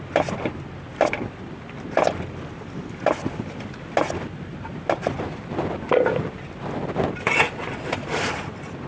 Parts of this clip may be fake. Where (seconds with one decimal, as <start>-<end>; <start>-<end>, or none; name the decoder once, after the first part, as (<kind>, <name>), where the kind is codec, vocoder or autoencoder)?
none